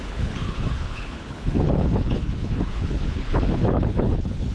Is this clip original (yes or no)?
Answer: no